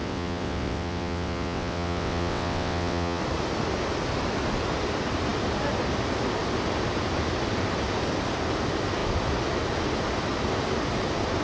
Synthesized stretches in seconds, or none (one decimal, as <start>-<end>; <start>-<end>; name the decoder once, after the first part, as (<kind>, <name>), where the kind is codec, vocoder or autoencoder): 0.0-3.2 (vocoder, WaveNeXt)